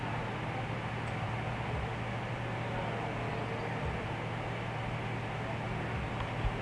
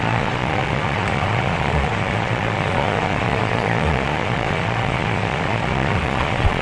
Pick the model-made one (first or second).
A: second